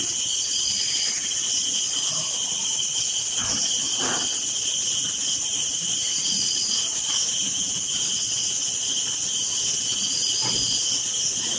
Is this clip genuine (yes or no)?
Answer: yes